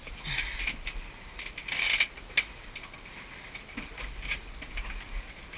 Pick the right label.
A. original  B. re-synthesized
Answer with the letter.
A